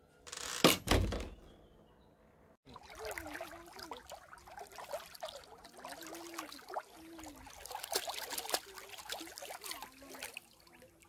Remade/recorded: recorded